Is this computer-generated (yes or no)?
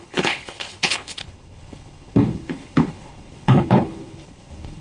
yes